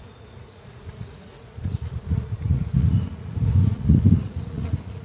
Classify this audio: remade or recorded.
remade